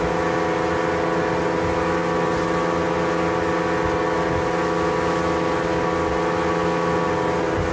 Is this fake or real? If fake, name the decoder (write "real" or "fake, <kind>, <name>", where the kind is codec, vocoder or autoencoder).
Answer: real